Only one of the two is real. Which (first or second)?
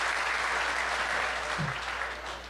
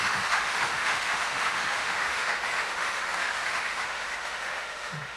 first